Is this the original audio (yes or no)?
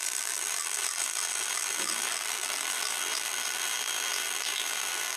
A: no